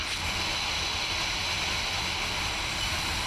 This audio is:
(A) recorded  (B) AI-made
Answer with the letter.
A